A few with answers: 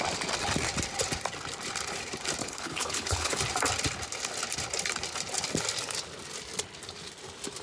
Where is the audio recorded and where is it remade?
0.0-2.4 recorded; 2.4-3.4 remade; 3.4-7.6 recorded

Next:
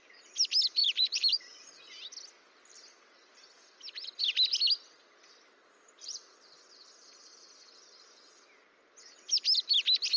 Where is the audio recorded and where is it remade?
0.0-0.8 recorded; 0.8-1.7 remade; 1.7-10.2 recorded

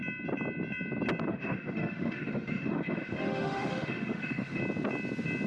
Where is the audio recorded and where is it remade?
0.0-1.3 recorded; 1.3-4.6 remade; 4.6-5.5 recorded

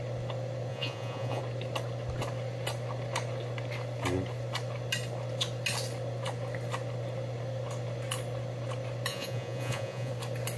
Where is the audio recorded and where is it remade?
0.0-0.7 recorded; 0.7-1.4 remade; 1.4-9.1 recorded; 9.1-10.1 remade; 10.1-10.6 recorded

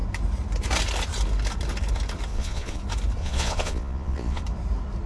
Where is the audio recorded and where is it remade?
0.0-2.3 recorded; 2.3-2.8 remade; 2.8-3.2 recorded; 3.2-4.4 remade; 4.4-5.1 recorded

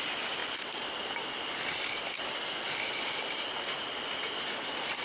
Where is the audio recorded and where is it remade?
0.0-5.0 recorded